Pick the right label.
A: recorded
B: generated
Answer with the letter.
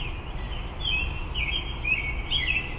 A